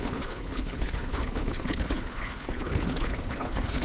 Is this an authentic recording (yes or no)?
no